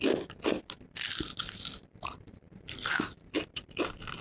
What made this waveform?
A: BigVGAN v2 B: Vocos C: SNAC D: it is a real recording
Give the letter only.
D